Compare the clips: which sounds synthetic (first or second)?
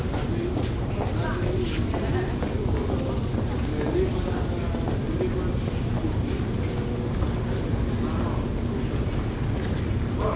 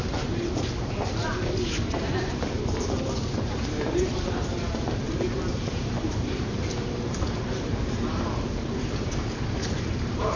second